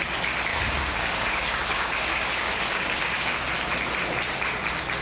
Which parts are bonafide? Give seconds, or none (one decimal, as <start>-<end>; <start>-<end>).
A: 0.0-0.5; 3.5-5.0